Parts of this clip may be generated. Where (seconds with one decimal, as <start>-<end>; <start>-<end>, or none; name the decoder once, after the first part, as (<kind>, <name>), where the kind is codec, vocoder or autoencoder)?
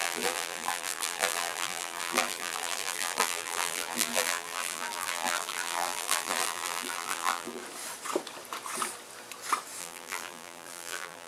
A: 0.0-7.6 (vocoder, BigVGAN v2); 9.8-11.3